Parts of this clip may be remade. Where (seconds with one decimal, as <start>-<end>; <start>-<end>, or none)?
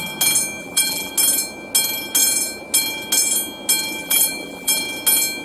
0.6-1.1; 4.0-4.8